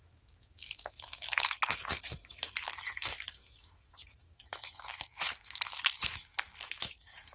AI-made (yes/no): yes